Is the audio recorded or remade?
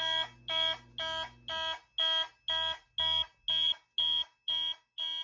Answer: recorded